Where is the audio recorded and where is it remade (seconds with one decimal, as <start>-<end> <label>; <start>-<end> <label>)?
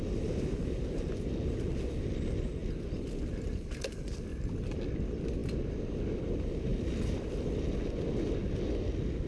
0.0-4.3 recorded; 4.3-4.8 remade; 4.8-6.7 recorded; 6.7-7.2 remade; 7.2-9.3 recorded